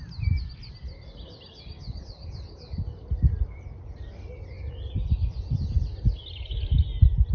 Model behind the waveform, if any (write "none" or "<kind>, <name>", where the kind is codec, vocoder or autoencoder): none